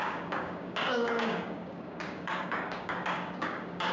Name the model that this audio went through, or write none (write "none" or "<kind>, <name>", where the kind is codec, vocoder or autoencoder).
codec, DAC